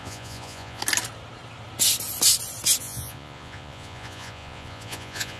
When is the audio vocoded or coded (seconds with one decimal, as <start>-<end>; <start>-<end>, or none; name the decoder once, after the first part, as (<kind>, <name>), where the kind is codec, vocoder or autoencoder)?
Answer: 0.0-0.8 (vocoder, Vocos); 2.8-5.4